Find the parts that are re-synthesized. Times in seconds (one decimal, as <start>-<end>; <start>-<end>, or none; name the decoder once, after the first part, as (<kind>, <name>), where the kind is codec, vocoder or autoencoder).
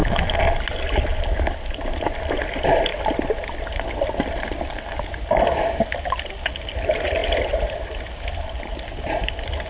none